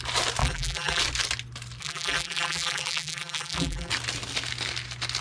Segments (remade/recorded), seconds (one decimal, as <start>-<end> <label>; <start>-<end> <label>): 0.0-0.4 recorded; 0.4-1.0 remade; 1.0-1.8 recorded; 1.8-3.9 remade; 3.9-5.2 recorded